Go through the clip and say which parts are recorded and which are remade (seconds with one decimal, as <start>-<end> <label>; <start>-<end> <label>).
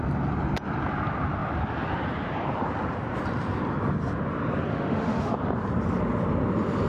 0.0-4.7 recorded; 4.7-5.3 remade; 5.3-6.9 recorded